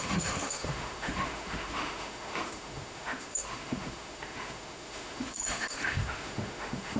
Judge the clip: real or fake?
fake